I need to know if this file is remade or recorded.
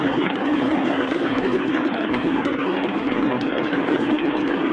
remade